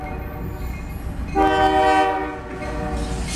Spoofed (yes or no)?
no